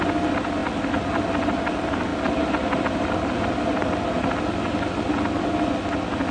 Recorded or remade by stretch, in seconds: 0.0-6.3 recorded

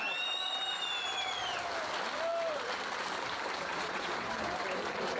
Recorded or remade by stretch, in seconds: 0.0-3.7 recorded; 3.7-4.3 remade; 4.3-5.2 recorded

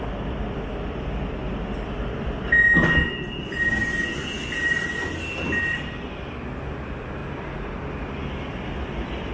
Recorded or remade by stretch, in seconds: 0.0-9.3 recorded

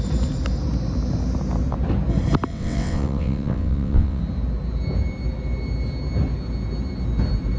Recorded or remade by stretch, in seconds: 0.0-2.5 recorded; 2.5-4.2 remade; 4.2-7.6 recorded

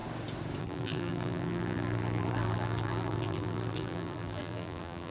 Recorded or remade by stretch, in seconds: 0.0-0.6 recorded; 0.6-5.1 remade

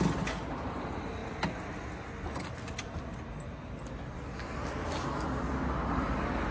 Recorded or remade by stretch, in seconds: 0.0-6.5 recorded

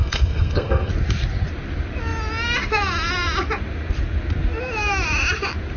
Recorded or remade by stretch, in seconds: 0.0-0.9 remade; 0.9-5.8 recorded